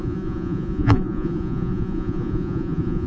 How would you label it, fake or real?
fake